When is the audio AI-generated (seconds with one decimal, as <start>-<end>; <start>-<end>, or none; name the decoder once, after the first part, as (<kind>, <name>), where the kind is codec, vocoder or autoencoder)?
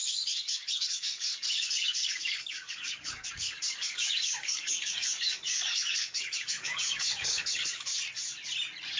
0.0-7.9 (codec, DAC)